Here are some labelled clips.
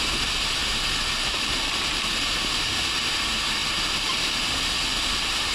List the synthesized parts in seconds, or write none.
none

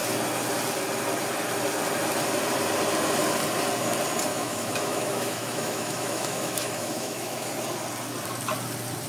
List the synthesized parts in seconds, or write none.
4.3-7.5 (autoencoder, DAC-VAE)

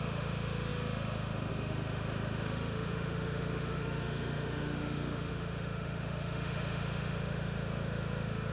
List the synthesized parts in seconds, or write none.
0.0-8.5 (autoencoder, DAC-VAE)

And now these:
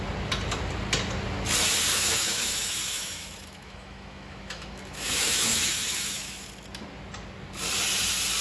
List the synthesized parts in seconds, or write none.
1.9-6.5 (autoencoder, DAC-VAE)

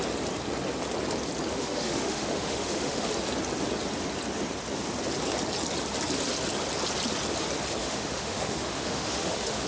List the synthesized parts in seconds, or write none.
1.5-3.1 (autoencoder, DAC-VAE); 7.8-9.7

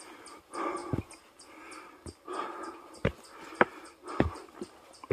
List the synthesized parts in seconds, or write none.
none